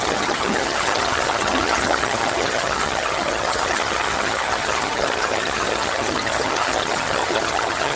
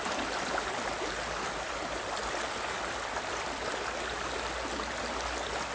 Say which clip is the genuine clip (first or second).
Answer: second